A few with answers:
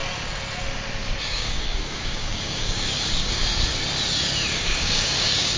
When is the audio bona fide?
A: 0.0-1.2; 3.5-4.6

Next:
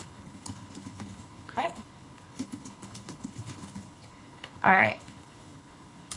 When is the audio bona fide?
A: none

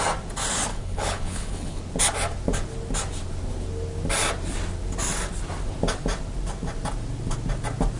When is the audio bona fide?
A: 0.0-0.7; 1.8-8.0

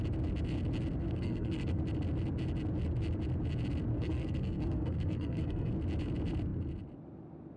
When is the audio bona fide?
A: 0.0-1.0; 1.8-3.9; 5.7-7.6

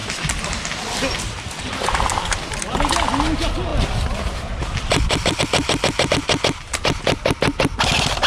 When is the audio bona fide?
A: 1.6-3.7; 5.4-8.3